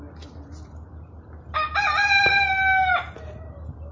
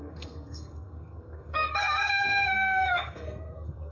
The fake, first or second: second